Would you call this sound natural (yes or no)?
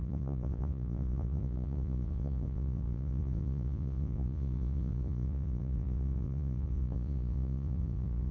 no